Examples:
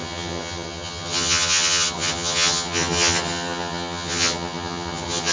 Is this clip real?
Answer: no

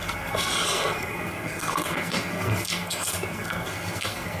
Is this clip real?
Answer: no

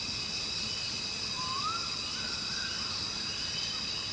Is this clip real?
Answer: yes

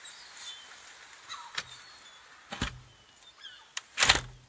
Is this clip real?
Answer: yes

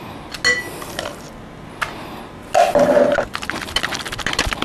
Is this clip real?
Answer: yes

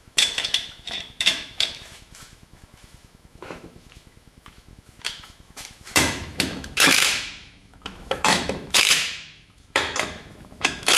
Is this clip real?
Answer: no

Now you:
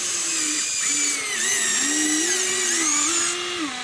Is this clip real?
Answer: yes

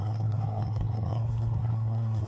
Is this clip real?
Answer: no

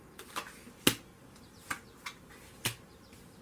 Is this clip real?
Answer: yes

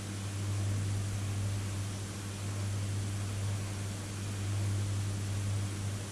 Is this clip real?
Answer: yes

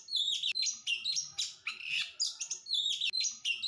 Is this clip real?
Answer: yes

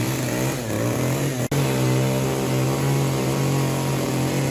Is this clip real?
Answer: yes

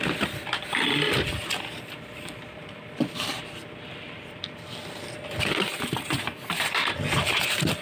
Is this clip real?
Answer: no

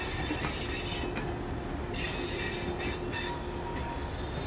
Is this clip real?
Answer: yes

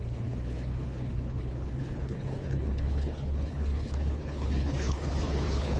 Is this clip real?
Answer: no